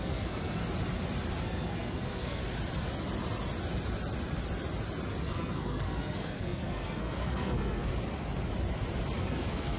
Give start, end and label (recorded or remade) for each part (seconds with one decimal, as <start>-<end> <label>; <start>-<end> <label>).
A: 0.0-0.6 remade; 0.6-1.4 recorded; 1.4-2.4 remade; 2.4-5.2 recorded; 5.2-7.9 remade; 7.9-9.2 recorded; 9.2-9.8 remade